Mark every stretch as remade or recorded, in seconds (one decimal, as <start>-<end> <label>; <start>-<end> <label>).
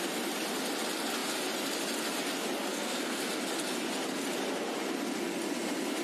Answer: 0.0-2.7 recorded; 2.7-3.3 remade; 3.3-6.0 recorded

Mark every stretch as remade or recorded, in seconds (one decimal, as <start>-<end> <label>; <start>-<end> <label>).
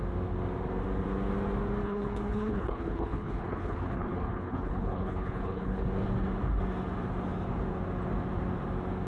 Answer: 0.0-1.8 recorded; 1.8-5.8 remade; 5.8-9.1 recorded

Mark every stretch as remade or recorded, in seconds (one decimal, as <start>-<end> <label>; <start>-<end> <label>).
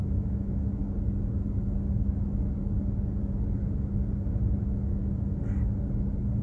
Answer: 0.0-0.8 remade; 0.8-4.6 recorded; 4.6-5.0 remade; 5.0-6.4 recorded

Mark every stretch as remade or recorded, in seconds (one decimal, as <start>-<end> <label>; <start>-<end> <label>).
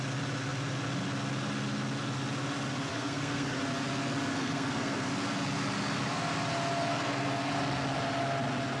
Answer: 0.0-2.9 recorded; 2.9-3.6 remade; 3.6-4.3 recorded; 4.3-5.1 remade; 5.1-6.9 recorded; 6.9-7.5 remade; 7.5-8.8 recorded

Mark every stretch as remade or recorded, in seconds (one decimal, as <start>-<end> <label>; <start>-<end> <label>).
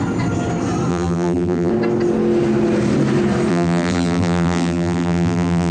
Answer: 0.0-0.9 recorded; 0.9-1.7 remade; 1.7-3.5 recorded; 3.5-5.7 remade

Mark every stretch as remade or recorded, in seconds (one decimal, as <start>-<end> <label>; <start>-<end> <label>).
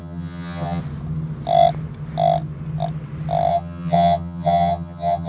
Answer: 0.0-0.8 remade; 0.8-3.5 recorded; 3.5-5.3 remade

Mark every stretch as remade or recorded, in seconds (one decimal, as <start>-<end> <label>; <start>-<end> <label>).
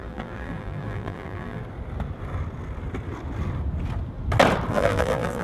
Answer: 0.0-1.6 remade; 1.6-4.7 recorded; 4.7-5.4 remade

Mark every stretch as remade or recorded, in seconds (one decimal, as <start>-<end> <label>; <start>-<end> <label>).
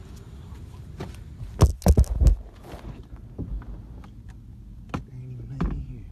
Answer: 0.0-6.1 recorded